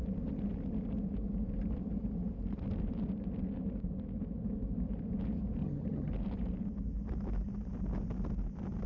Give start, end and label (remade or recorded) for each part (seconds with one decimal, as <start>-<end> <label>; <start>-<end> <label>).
0.0-5.6 recorded; 5.6-6.1 remade; 6.1-8.9 recorded